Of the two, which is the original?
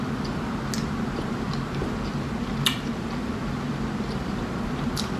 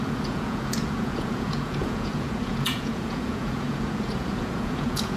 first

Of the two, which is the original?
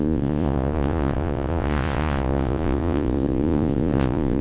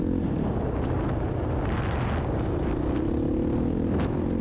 second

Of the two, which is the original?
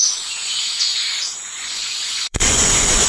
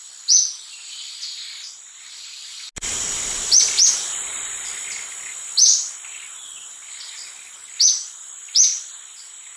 second